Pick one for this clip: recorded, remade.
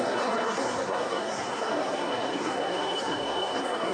remade